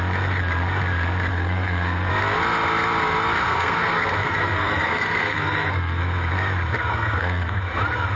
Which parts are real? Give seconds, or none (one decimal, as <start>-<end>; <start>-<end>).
0.0-1.3; 2.1-3.4; 6.0-6.9; 7.6-8.2